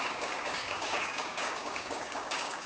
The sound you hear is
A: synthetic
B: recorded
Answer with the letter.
A